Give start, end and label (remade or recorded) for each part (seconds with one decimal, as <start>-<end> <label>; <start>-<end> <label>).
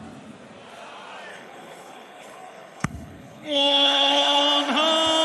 0.0-1.3 recorded; 1.3-4.4 remade; 4.4-5.2 recorded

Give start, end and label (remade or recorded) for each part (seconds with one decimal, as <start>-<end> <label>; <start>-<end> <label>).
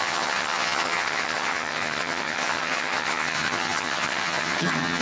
0.0-5.0 remade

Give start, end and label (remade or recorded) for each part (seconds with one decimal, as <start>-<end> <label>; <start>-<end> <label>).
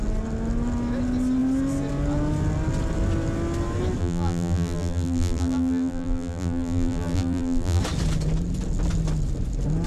0.0-4.0 recorded; 4.0-7.8 remade; 7.8-9.9 recorded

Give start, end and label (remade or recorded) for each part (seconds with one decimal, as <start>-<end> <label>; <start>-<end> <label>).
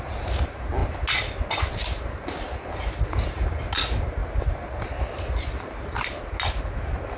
0.0-7.2 recorded